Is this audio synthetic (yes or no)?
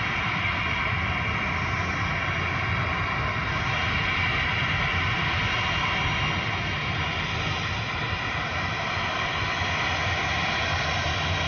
no